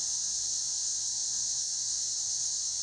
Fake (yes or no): yes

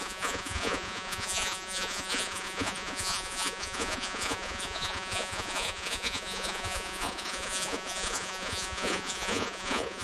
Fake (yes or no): yes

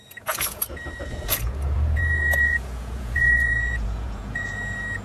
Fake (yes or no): yes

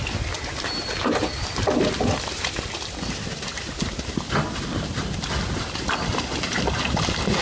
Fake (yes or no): no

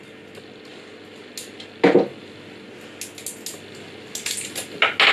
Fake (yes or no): no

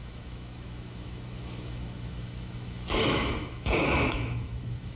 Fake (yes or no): yes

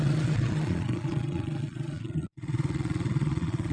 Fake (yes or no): yes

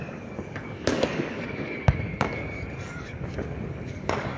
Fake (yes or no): yes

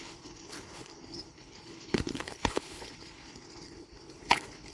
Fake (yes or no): yes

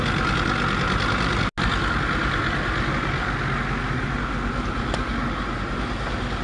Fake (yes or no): no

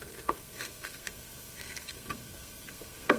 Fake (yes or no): yes